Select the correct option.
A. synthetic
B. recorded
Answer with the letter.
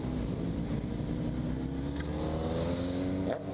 B